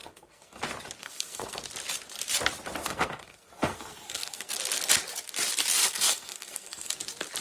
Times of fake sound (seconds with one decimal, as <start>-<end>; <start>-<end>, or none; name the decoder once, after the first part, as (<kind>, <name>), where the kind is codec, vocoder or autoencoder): 0.0-0.6 (codec, SNAC); 1.0-1.6; 2.8-4.5; 5.8-6.9